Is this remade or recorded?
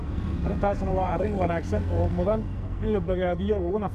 remade